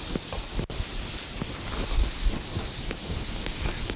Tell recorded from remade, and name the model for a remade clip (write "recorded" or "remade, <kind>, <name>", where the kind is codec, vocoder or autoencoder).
recorded